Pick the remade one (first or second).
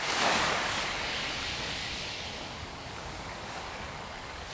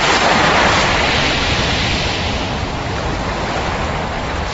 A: first